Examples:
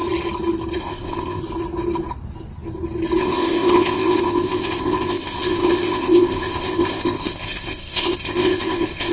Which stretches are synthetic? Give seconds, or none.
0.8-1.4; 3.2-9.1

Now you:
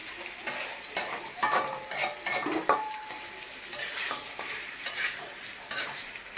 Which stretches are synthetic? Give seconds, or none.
0.6-2.0; 2.8-6.4

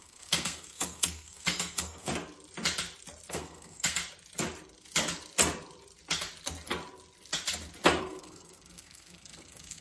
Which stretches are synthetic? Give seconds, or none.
0.0-2.1; 3.3-4.0; 8.0-9.8

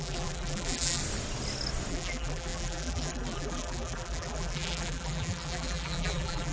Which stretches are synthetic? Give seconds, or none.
0.0-1.0; 1.9-6.5

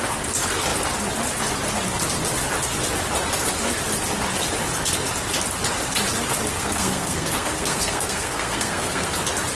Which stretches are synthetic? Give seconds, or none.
6.5-9.1

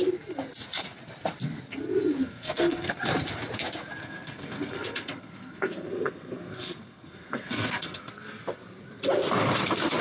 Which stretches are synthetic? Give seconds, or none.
2.2-2.9; 4.0-8.1

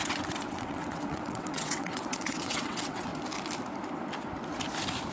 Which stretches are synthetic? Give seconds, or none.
0.0-3.1

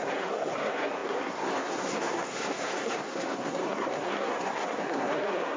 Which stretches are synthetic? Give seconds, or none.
0.0-5.6